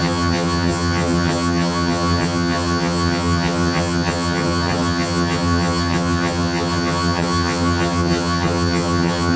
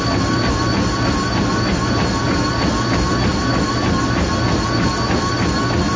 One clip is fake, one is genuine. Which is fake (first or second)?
first